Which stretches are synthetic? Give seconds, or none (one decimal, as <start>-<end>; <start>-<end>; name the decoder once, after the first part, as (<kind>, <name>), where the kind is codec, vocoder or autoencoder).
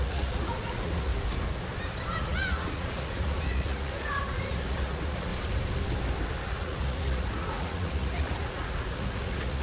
0.0-1.1 (vocoder, Vocos); 2.2-5.3; 6.4-9.6